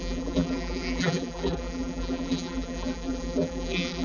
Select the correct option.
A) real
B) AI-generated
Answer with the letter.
B